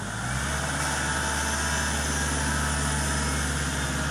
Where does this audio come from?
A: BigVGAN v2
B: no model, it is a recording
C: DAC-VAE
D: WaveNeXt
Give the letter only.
B